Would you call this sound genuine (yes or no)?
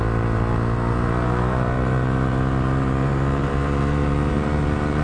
no